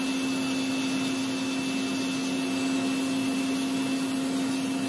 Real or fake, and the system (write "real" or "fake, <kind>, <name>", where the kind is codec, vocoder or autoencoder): real